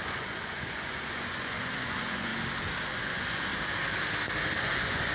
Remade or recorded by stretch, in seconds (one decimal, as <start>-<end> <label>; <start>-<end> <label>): 0.0-2.3 remade; 2.3-2.9 recorded; 2.9-3.5 remade; 3.5-4.6 recorded; 4.6-5.1 remade